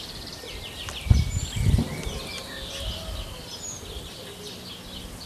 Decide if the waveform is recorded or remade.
recorded